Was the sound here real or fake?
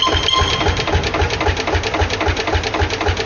real